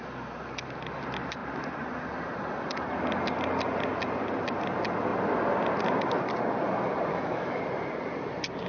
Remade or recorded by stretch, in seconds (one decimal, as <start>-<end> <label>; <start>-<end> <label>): 0.0-7.1 recorded; 7.1-7.6 remade; 7.6-8.7 recorded